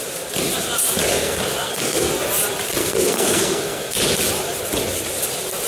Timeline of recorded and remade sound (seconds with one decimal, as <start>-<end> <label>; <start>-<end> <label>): 0.0-1.1 recorded; 1.1-2.1 remade; 2.1-2.8 recorded; 2.8-4.0 remade; 4.0-5.7 recorded